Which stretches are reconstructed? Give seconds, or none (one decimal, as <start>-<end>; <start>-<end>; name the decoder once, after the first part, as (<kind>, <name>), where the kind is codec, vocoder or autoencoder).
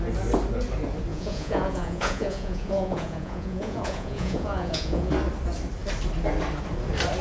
1.1-5.1 (vocoder, Vocos)